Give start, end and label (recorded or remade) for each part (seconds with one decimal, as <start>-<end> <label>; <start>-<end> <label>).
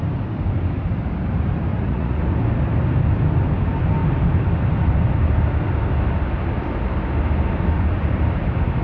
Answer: 0.0-1.7 recorded; 1.7-2.2 remade; 2.2-8.8 recorded